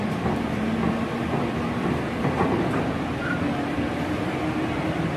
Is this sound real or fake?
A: fake